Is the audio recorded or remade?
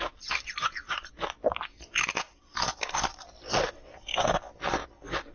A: recorded